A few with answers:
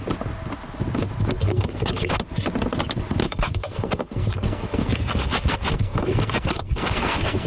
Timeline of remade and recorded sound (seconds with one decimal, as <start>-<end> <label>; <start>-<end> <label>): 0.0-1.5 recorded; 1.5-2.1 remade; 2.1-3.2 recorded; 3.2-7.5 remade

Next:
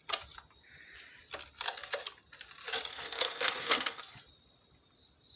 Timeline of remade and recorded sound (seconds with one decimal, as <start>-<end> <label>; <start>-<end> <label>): 0.0-2.9 recorded; 2.9-4.0 remade; 4.0-5.4 recorded

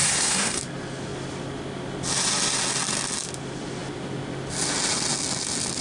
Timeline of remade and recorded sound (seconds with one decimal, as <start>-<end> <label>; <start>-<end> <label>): 0.0-0.6 remade; 0.6-5.8 recorded

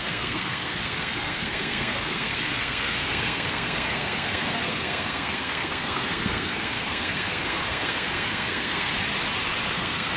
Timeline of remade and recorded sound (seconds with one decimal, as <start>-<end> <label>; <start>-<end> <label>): 0.0-8.9 remade; 8.9-9.7 recorded; 9.7-10.2 remade

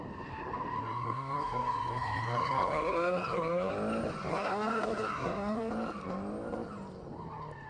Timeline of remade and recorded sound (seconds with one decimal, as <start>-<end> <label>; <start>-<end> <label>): 0.0-0.8 recorded; 0.8-3.7 remade; 3.7-4.3 recorded; 4.3-5.7 remade; 5.7-7.7 recorded

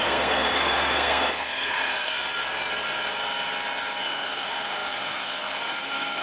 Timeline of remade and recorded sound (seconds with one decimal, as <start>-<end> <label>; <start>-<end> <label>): 0.0-2.1 remade; 2.1-4.0 recorded; 4.0-6.2 remade